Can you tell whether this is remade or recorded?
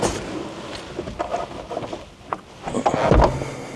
recorded